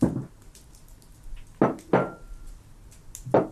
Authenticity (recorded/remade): recorded